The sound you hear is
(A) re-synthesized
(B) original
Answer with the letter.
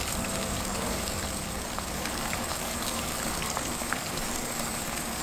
A